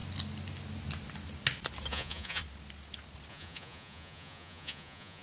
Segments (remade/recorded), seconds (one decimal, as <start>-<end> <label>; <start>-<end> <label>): 0.0-1.9 recorded; 1.9-2.4 remade; 2.4-3.3 recorded; 3.3-5.2 remade